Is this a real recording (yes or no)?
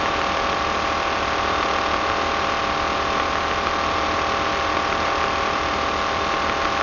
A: yes